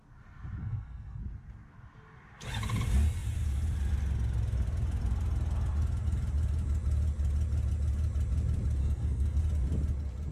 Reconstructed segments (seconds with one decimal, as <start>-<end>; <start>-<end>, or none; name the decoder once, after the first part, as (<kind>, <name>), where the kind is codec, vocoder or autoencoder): 0.6-1.2 (codec, SNAC); 8.8-9.4